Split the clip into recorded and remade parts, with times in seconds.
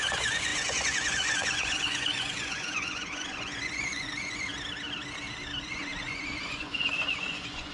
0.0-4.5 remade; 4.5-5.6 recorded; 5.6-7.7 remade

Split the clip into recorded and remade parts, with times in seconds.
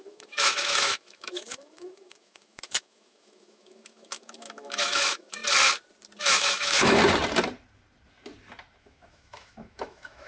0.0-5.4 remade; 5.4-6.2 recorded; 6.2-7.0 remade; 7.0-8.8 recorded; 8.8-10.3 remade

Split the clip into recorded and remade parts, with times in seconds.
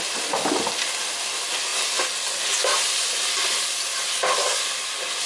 0.0-5.3 recorded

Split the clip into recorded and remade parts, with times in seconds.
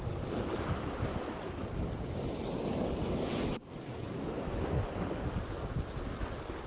0.0-6.7 recorded